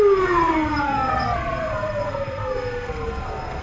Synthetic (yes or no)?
yes